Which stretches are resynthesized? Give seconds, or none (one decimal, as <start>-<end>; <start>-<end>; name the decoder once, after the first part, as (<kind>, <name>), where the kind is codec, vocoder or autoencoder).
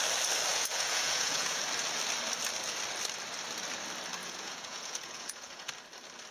0.5-1.6 (vocoder, Vocos); 4.2-5.7